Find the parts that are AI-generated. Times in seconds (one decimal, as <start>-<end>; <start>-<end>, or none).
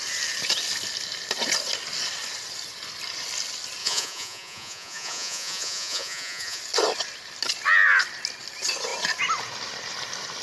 3.8-6.6